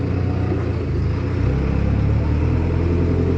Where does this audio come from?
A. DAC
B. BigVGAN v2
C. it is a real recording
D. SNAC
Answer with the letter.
C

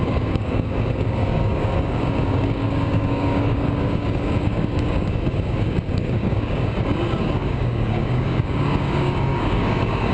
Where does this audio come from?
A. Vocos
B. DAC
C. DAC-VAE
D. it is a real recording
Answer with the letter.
B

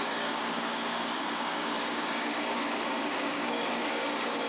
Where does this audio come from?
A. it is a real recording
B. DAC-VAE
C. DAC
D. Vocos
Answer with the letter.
C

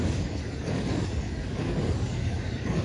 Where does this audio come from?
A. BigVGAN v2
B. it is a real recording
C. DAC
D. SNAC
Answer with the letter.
C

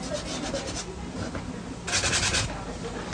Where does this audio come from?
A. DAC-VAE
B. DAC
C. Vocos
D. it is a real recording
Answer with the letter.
D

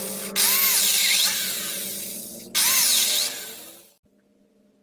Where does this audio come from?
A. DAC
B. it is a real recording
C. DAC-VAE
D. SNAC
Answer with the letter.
B